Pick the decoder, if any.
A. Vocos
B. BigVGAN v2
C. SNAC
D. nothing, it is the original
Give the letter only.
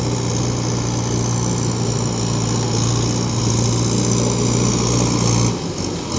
D